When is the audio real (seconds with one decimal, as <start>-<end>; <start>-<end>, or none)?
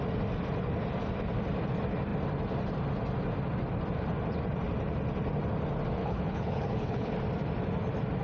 0.0-6.0; 7.1-8.2